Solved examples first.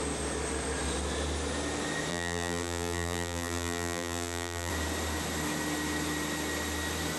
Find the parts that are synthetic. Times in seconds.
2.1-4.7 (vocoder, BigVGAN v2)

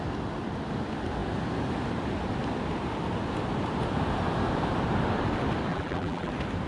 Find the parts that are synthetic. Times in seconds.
5.7-6.3 (vocoder, BigVGAN v2)

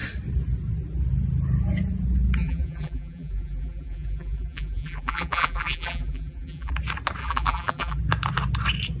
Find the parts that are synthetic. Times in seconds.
2.4-6.7 (vocoder, BigVGAN v2); 7.2-8.0

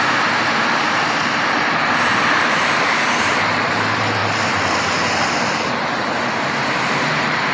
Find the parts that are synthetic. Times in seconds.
0.0-2.1 (vocoder, BigVGAN v2); 3.2-4.2; 6.4-7.5